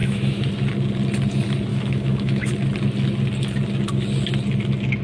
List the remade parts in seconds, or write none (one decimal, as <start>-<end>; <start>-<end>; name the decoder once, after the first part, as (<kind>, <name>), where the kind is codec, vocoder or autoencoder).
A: 0.0-0.5 (autoencoder, DAC-VAE); 1.7-2.5